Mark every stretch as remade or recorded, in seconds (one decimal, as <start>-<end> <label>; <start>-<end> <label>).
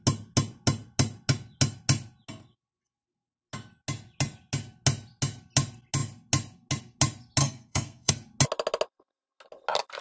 0.0-7.4 recorded; 7.4-8.1 remade; 8.1-10.0 recorded